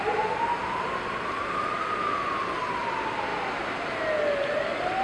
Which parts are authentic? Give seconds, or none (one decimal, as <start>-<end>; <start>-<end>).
0.0-5.0